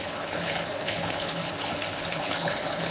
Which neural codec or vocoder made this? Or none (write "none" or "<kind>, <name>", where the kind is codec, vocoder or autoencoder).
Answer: codec, HILCodec